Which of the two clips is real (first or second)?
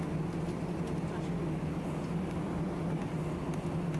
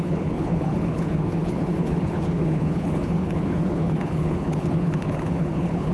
first